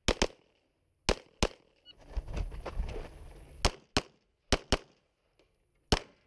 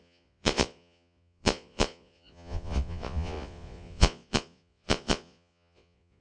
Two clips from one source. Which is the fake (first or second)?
second